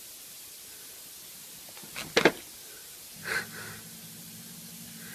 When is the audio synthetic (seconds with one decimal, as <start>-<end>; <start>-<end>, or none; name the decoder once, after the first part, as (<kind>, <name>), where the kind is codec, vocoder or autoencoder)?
none